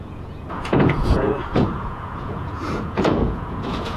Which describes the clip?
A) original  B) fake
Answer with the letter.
B